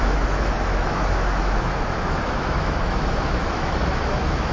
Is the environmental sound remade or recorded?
remade